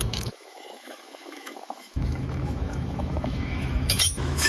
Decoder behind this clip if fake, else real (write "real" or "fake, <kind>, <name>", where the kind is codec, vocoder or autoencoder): fake, autoencoder, DAC-VAE